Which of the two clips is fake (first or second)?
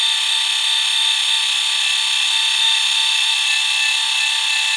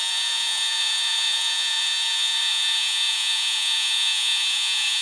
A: second